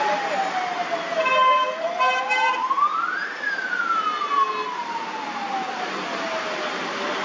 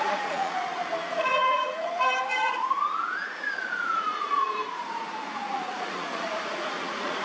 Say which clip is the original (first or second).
first